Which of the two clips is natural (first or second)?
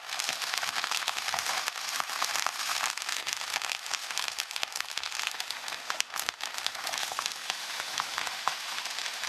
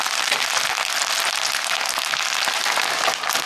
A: second